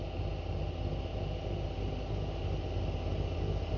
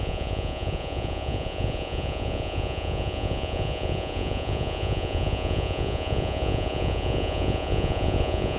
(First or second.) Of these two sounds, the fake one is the second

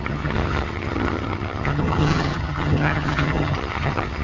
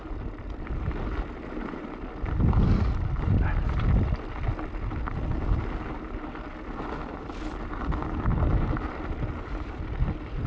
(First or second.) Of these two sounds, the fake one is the first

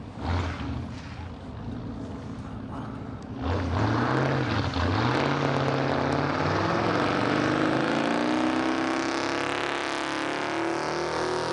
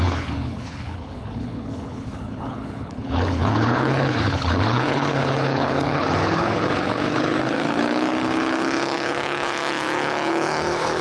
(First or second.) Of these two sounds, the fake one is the second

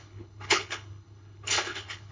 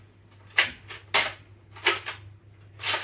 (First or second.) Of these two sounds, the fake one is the first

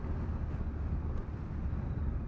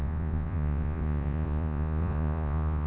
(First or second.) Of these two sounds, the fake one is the second